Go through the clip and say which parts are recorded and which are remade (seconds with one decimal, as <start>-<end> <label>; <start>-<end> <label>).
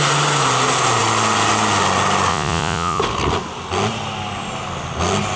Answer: 0.0-2.3 recorded; 2.3-3.0 remade; 3.0-5.4 recorded